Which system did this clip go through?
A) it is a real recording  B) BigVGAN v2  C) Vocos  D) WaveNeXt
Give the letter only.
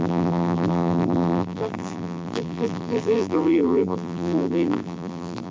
B